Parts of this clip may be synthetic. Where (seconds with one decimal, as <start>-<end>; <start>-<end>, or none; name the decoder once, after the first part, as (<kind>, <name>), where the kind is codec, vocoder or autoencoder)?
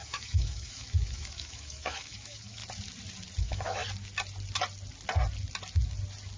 0.0-2.6 (autoencoder, DAC-VAE); 3.4-3.8